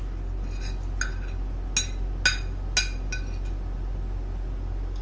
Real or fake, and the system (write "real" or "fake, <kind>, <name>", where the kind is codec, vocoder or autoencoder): real